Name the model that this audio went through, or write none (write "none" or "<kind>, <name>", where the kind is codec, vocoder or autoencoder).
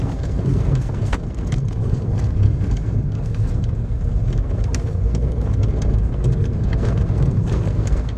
codec, SNAC